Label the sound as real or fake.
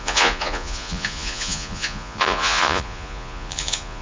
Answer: fake